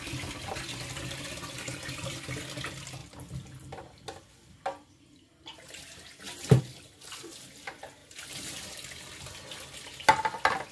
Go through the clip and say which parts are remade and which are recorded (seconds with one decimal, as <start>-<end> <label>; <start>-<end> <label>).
0.0-8.0 recorded; 8.0-8.7 remade; 8.7-10.7 recorded